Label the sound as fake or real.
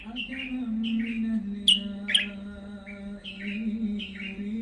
real